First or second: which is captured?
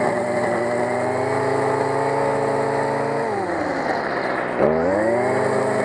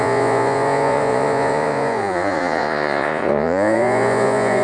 first